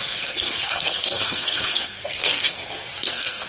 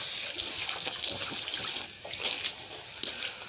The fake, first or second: first